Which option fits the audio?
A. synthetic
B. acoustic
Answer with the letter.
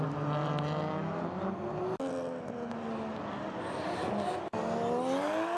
B